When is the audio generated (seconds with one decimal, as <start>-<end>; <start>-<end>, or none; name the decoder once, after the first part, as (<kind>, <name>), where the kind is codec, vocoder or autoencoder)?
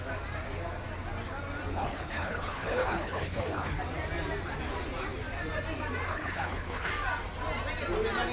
1.7-3.8 (codec, HILCodec); 6.1-6.9